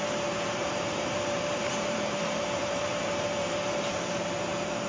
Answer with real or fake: fake